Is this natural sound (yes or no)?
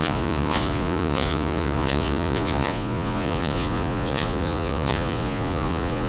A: no